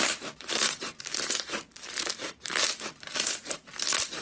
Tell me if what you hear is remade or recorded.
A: remade